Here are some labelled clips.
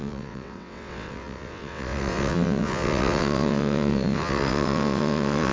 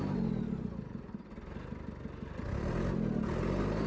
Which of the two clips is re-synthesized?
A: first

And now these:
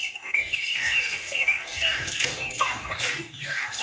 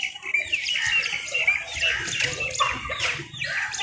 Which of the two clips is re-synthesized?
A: first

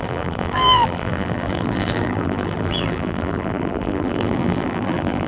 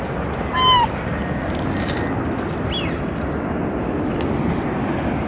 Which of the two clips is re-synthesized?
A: first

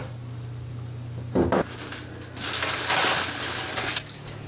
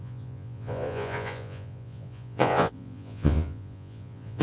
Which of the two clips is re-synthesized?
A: second